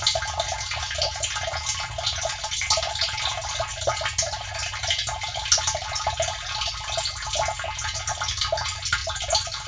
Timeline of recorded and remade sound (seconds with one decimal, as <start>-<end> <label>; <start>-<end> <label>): 0.0-9.7 recorded